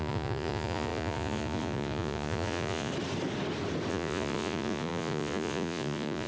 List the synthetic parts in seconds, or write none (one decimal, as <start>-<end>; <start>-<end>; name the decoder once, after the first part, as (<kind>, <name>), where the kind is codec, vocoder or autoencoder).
0.0-2.9 (vocoder, Vocos); 3.9-6.3

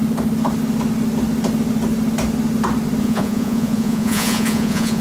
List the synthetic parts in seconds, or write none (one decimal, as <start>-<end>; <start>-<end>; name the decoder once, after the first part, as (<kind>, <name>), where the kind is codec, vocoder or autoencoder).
3.0-5.0 (vocoder, Vocos)

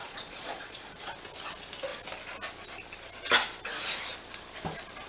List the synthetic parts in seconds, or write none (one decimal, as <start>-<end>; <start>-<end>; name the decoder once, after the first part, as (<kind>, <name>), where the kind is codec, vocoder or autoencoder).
0.0-1.1 (vocoder, Vocos)